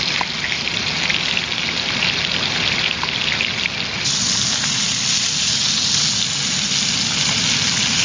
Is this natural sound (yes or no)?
yes